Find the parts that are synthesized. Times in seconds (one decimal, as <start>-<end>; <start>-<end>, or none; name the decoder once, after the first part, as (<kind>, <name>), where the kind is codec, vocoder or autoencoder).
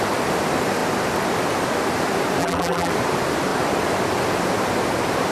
2.4-2.9 (vocoder, BigVGAN v2)